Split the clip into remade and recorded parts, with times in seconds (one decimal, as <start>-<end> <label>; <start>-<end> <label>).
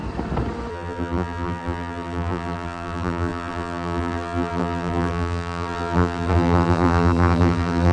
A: 0.0-0.7 recorded; 0.7-7.9 remade